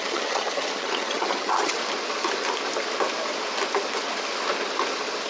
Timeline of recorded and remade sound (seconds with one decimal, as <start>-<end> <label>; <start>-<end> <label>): 0.0-1.8 remade; 1.8-5.3 recorded